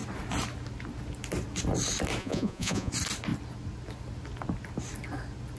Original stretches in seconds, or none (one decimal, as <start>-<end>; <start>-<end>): 0.0-2.2; 2.9-5.6